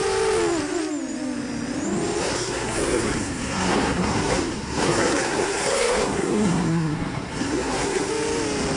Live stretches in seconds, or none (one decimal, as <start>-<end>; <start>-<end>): 0.0-2.2; 8.1-8.8